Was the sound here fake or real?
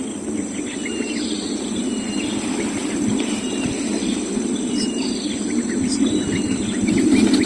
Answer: real